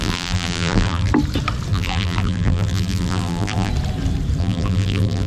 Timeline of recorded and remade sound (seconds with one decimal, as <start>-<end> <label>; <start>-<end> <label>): 0.0-1.1 remade; 1.1-1.7 recorded; 1.7-3.7 remade; 3.7-4.4 recorded; 4.4-5.3 remade